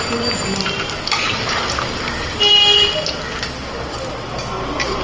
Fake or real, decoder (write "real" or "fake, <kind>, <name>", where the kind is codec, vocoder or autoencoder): real